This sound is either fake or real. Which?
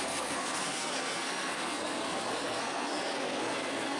fake